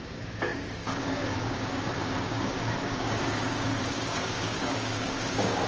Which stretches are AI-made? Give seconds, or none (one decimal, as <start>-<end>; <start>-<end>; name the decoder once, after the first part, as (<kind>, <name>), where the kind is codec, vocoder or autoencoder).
0.0-5.7 (codec, DAC)